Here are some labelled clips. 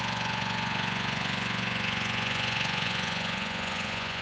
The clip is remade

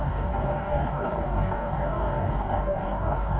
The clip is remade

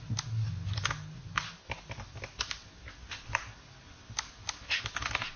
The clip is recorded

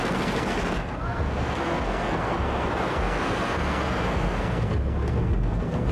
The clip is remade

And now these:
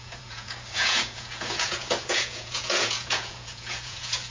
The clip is remade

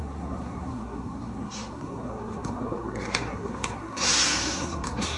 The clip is remade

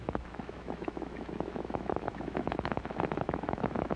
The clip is remade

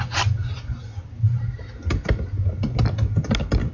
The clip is recorded